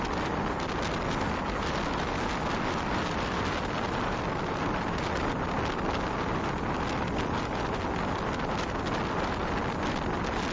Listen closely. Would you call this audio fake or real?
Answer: real